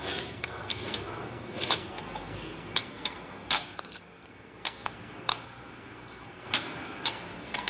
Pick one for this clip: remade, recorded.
remade